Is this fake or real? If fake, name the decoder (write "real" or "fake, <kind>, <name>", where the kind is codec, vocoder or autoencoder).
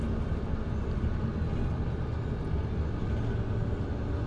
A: real